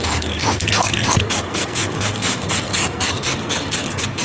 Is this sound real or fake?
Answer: fake